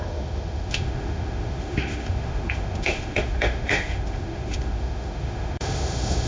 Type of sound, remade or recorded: remade